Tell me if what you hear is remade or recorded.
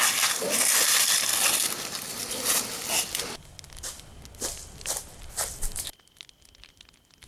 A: recorded